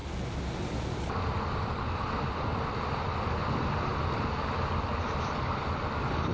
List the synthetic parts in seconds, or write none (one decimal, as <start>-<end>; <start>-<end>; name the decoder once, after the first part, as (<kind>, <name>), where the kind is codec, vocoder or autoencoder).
0.0-3.9 (vocoder, BigVGAN v2); 4.4-6.3